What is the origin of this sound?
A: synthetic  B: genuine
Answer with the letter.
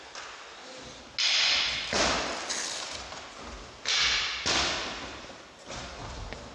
B